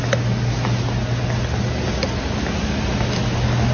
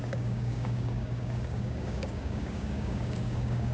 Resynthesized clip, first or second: second